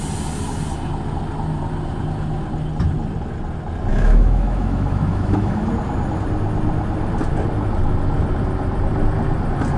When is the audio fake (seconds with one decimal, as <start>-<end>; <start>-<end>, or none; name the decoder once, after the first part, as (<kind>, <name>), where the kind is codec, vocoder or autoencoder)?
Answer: 3.9-5.7 (autoencoder, DAC-VAE)